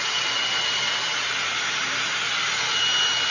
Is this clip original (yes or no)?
yes